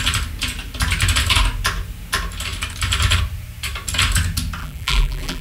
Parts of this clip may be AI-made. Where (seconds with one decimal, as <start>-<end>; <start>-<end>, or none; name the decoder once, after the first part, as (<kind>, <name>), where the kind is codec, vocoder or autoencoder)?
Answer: 4.6-5.4 (vocoder, BigVGAN v2)